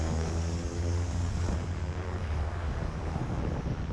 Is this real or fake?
fake